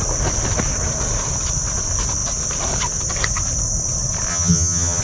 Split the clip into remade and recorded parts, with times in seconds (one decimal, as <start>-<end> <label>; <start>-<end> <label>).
0.0-4.3 recorded; 4.3-5.0 remade